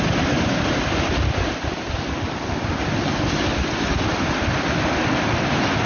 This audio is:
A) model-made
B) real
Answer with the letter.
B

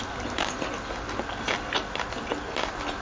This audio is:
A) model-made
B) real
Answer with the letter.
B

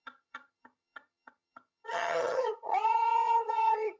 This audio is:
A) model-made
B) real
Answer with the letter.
A